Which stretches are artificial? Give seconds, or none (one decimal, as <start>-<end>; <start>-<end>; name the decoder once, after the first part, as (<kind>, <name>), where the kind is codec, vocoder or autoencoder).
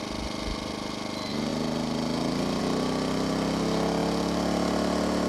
none